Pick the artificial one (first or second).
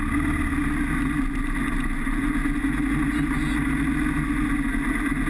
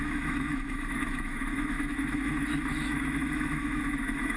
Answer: second